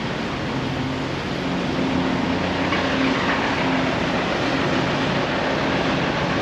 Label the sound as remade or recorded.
recorded